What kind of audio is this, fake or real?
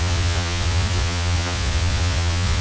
fake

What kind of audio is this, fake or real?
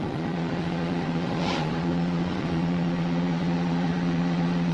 fake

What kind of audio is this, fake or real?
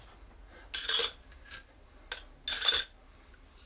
real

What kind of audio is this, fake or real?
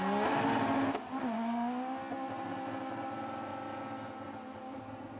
real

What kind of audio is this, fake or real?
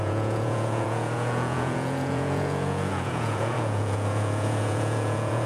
fake